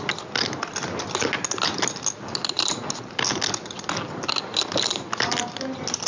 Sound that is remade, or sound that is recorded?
recorded